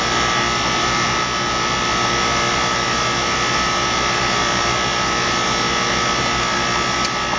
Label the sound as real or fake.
real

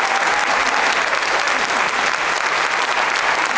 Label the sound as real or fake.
real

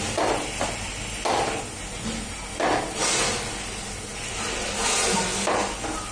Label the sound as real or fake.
real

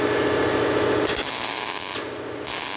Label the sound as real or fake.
real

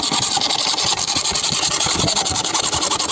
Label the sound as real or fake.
real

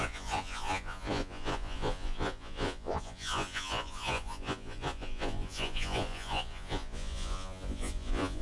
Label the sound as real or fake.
fake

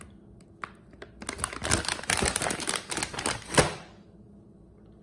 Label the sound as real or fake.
real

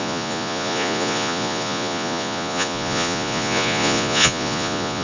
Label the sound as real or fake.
fake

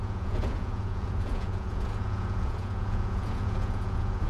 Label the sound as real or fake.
fake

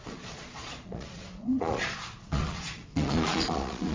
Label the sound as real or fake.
fake